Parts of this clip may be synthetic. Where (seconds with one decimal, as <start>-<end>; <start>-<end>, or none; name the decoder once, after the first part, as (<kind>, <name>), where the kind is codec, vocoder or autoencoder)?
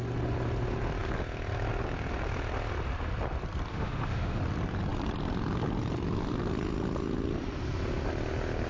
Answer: 3.7-4.4 (autoencoder, DAC-VAE)